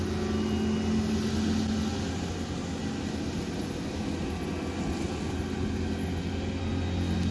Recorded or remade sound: recorded